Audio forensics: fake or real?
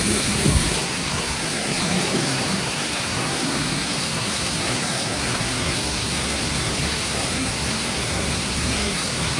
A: fake